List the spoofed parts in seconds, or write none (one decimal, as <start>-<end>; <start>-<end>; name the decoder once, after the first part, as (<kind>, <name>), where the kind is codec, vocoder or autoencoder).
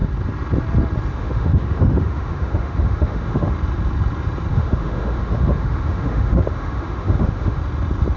1.1-3.5 (autoencoder, DAC-VAE); 4.5-7.6